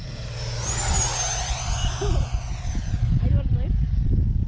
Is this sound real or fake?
real